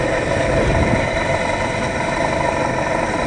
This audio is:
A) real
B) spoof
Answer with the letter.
A